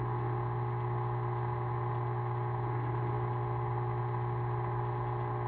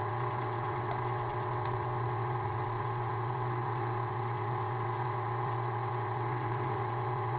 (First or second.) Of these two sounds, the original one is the first